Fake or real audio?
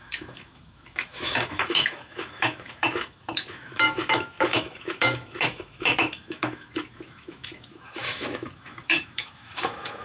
fake